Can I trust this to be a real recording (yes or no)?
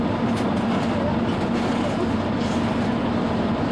yes